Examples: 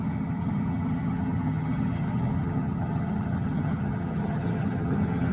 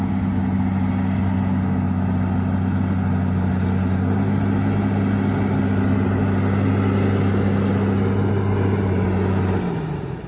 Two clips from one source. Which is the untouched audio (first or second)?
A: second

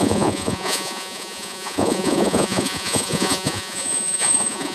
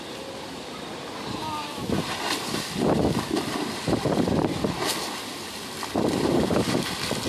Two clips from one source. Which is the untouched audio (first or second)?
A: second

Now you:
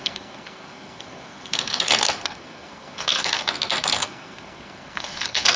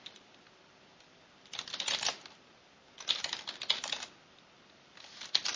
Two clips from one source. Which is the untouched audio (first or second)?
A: second